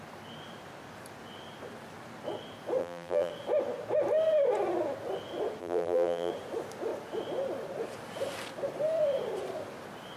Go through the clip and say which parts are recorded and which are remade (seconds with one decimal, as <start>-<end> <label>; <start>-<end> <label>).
0.0-2.8 recorded; 2.8-3.3 remade; 3.3-5.6 recorded; 5.6-6.3 remade; 6.3-10.2 recorded